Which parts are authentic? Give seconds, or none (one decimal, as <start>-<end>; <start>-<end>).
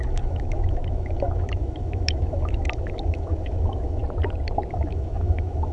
4.0-4.7